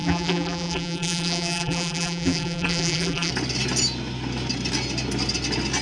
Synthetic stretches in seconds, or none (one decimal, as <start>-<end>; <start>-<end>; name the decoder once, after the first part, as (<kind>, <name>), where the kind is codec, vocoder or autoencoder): 0.0-3.3 (vocoder, BigVGAN v2)